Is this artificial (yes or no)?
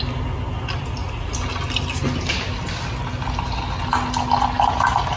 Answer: no